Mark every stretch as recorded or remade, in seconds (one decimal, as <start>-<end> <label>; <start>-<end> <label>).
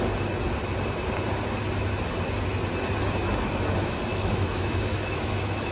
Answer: 0.0-4.1 recorded; 4.1-5.7 remade